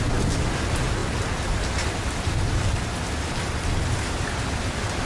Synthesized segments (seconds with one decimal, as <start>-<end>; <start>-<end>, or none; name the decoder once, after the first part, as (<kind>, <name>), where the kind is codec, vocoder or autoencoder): none